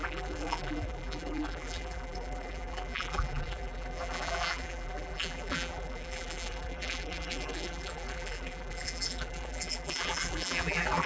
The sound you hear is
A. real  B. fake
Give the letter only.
B